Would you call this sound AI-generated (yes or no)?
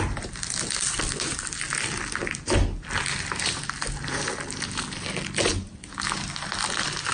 no